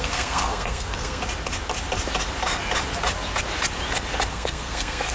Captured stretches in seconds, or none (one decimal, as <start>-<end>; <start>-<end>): 1.2-4.3